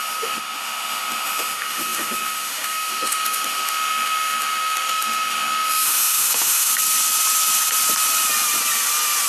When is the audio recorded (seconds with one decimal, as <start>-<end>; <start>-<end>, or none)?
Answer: 6.7-9.3